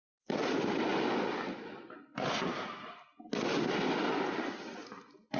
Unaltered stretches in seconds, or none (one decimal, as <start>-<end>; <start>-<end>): 0.0-5.4